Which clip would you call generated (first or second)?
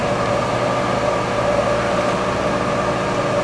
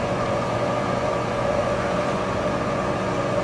second